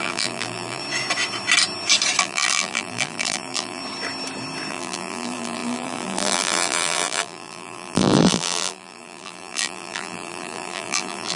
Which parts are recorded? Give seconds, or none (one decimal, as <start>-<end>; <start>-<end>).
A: 0.8-2.2; 3.8-4.7